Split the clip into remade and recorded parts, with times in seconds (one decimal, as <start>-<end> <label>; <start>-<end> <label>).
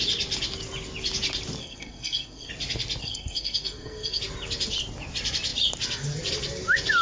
0.0-1.6 recorded; 1.6-2.5 remade; 2.5-3.0 recorded; 3.0-4.2 remade; 4.2-7.0 recorded